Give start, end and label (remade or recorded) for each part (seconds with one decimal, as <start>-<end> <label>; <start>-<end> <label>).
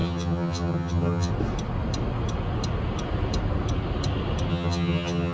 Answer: 0.0-1.3 remade; 1.3-4.5 recorded; 4.5-5.3 remade